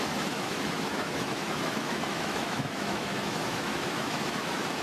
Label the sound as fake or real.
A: fake